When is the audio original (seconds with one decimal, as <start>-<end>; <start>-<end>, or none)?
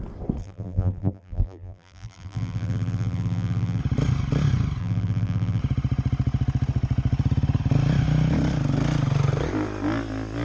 0.0-0.4; 3.8-4.8; 5.6-10.4